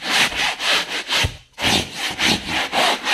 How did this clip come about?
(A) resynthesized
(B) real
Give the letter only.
B